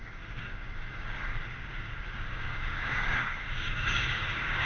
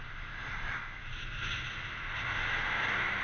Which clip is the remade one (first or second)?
first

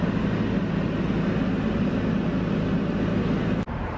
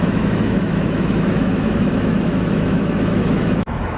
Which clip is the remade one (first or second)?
second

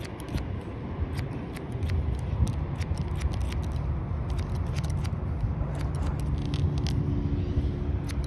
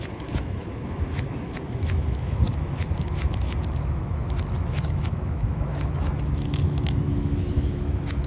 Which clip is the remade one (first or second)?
second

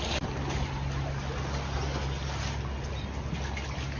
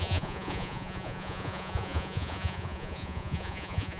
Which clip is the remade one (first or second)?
second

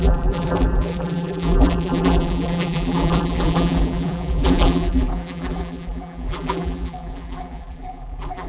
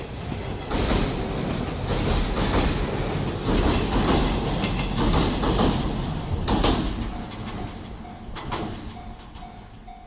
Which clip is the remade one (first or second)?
first